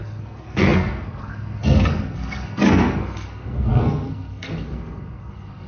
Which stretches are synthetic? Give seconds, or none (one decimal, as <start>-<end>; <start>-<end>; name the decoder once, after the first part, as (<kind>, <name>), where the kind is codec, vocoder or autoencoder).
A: 0.0-5.7 (codec, SNAC)